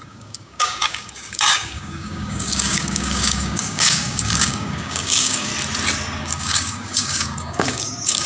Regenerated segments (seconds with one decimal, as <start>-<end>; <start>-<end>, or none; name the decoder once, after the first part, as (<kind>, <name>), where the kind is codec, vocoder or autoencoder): 0.0-5.5 (codec, DAC); 6.2-8.3